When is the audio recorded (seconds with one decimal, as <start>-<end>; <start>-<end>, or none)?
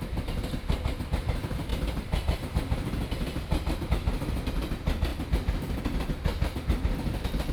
0.0-1.7; 3.9-6.3